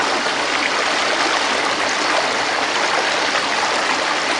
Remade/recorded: recorded